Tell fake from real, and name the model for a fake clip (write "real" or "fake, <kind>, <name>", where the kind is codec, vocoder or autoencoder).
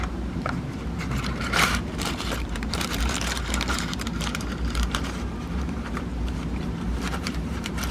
fake, vocoder, BigVGAN v2